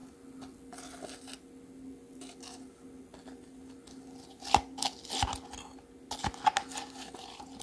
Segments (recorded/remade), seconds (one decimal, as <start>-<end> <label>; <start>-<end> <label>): 0.0-7.6 recorded